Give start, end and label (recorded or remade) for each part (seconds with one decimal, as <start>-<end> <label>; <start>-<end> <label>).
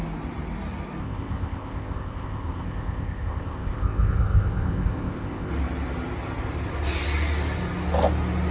0.0-1.0 recorded; 1.0-5.5 remade; 5.5-8.5 recorded